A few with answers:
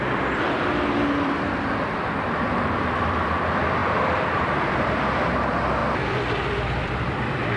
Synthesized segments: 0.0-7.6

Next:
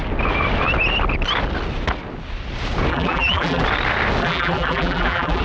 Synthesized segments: 2.9-3.6; 4.2-5.4

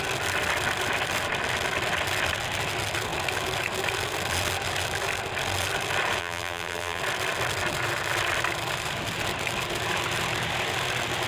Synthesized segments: 6.2-7.0